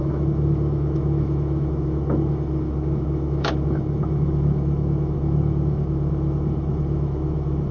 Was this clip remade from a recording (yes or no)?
yes